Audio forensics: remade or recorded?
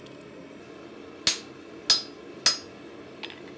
recorded